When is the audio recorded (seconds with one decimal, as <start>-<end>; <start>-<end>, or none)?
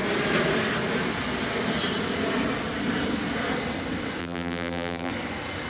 0.0-4.2; 5.1-5.7